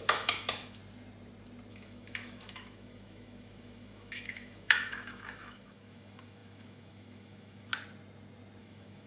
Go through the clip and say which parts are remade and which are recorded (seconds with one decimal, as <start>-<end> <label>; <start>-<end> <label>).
0.0-0.8 remade; 0.8-1.7 recorded; 1.7-7.7 remade; 7.7-8.6 recorded; 8.6-9.1 remade

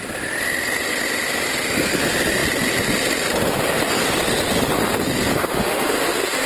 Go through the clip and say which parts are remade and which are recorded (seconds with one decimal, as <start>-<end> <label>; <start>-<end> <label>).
0.0-5.3 recorded; 5.3-6.5 remade

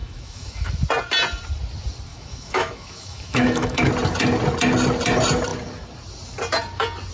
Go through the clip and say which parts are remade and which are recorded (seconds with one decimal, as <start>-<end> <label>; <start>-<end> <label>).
0.0-0.7 remade; 0.7-2.1 recorded; 2.1-3.9 remade; 3.9-7.1 recorded

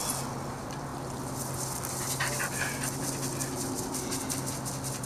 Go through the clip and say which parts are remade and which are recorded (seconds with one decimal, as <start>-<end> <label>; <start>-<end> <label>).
0.0-5.1 recorded

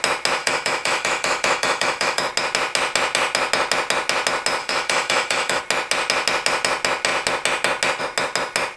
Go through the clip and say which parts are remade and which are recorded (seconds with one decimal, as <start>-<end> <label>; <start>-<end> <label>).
0.0-0.4 recorded; 0.4-2.3 remade; 2.3-4.6 recorded; 4.6-5.6 remade; 5.6-8.8 recorded